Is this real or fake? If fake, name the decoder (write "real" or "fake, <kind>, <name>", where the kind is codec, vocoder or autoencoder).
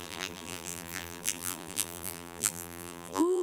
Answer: fake, vocoder, BigVGAN v2